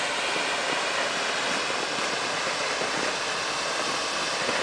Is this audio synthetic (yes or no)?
no